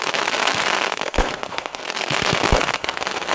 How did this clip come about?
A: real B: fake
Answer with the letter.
B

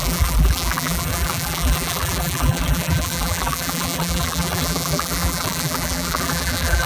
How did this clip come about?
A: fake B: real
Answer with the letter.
A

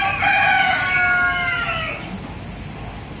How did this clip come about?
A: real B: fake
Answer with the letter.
A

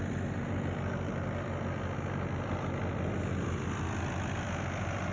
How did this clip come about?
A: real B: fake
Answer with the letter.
A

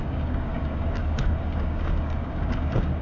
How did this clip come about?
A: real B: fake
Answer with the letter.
B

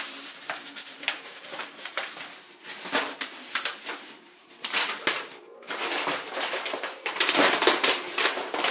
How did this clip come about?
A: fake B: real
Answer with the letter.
A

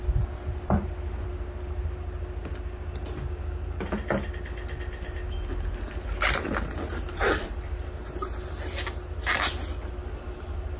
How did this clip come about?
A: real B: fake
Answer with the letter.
A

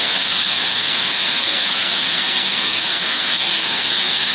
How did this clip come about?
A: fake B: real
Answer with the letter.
A